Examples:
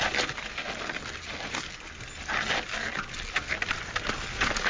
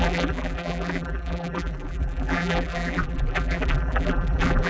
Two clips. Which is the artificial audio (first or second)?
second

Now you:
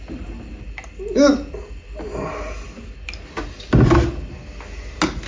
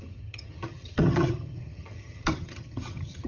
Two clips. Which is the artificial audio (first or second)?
second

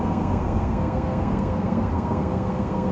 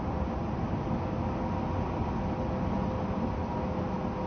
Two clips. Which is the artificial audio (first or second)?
first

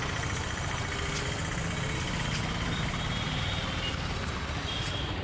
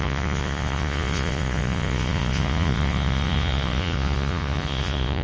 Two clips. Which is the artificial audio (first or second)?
second